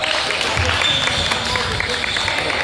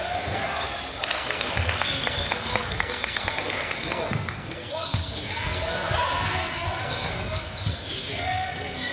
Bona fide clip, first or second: first